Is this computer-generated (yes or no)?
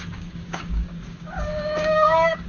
yes